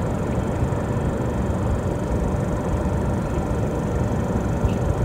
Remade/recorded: remade